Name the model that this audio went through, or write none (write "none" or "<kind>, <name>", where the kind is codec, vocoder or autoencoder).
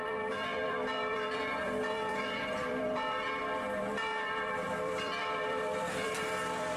vocoder, BigVGAN v2